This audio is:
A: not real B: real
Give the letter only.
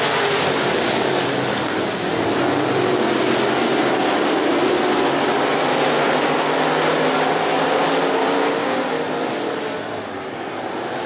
B